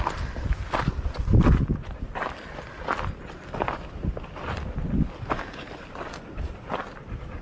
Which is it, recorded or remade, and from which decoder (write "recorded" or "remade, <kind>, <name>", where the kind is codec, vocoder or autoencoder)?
recorded